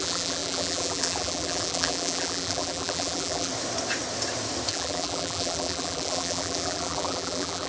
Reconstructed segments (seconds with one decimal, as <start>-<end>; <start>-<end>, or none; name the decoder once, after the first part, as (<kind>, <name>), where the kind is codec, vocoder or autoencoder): 0.0-3.5 (vocoder, BigVGAN v2); 4.7-7.7